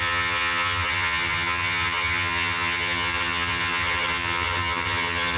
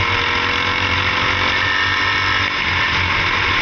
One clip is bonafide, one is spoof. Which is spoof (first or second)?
first